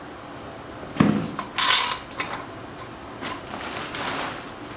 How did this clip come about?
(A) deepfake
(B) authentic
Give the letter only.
B